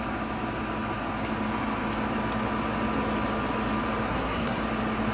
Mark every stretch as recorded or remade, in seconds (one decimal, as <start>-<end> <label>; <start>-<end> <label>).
0.0-4.1 recorded; 4.1-4.6 remade; 4.6-5.1 recorded